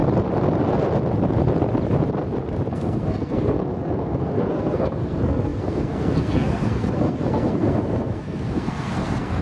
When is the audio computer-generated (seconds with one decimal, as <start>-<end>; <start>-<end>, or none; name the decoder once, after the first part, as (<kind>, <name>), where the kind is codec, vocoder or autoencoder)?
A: 2.7-9.4 (codec, SNAC)